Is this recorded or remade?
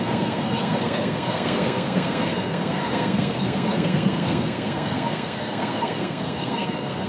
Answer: remade